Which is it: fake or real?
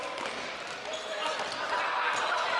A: real